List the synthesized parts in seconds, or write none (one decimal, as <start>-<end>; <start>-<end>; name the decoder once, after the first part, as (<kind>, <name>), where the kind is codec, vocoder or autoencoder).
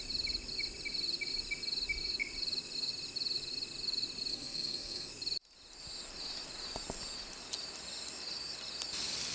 4.3-5.1 (codec, SNAC)